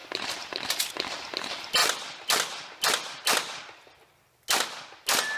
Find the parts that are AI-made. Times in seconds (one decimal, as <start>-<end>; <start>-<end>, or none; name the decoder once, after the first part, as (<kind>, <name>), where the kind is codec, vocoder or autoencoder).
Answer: 0.0-0.9 (vocoder, BigVGAN v2)